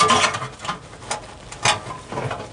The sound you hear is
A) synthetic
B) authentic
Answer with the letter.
B